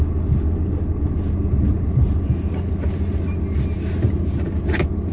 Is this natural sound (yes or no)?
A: yes